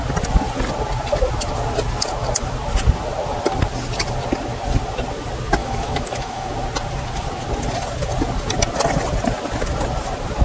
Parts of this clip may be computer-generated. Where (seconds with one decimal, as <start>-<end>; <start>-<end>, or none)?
5.6-6.5